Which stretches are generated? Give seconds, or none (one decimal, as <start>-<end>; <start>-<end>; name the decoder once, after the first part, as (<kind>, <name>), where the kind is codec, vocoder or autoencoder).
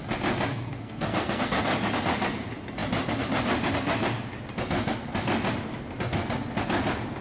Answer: 0.5-1.6 (codec, SNAC)